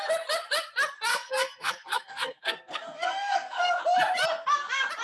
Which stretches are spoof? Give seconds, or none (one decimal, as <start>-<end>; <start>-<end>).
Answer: 1.1-3.8